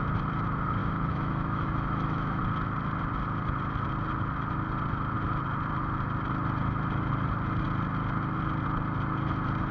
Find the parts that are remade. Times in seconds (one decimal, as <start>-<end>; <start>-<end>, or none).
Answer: 0.8-2.4